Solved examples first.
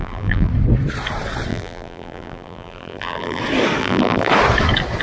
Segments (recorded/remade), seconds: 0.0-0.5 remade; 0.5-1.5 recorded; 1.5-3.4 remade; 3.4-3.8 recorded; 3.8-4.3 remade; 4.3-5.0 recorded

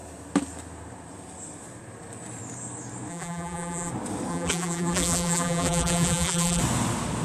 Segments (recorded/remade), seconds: 0.0-3.1 recorded; 3.1-3.9 remade; 3.9-4.3 recorded; 4.3-6.6 remade; 6.6-7.2 recorded

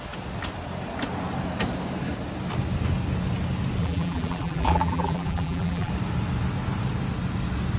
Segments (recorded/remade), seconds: 0.0-3.8 recorded; 3.8-5.9 remade; 5.9-7.8 recorded

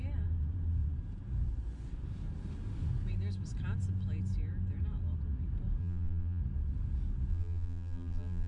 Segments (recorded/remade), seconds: 0.0-5.8 recorded; 5.8-6.4 remade; 6.4-7.3 recorded; 7.3-8.5 remade

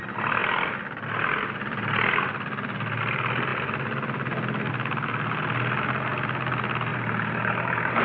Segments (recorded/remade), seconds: 0.0-6.9 recorded; 6.9-8.0 remade

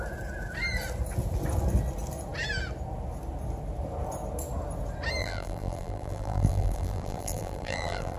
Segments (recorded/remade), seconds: 0.0-5.2 recorded; 5.2-8.2 remade

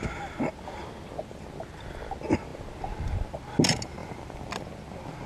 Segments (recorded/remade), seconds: 0.0-4.0 recorded; 4.0-4.5 remade; 4.5-5.3 recorded